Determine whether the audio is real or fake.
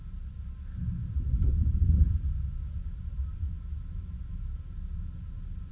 real